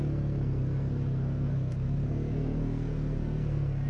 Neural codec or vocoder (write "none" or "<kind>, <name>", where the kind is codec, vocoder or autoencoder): codec, SNAC